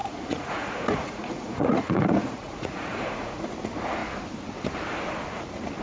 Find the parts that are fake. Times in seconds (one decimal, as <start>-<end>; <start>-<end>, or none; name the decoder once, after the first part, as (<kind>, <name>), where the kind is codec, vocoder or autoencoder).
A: 0.0-3.5 (vocoder, Vocos)